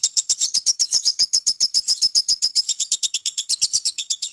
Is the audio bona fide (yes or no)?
no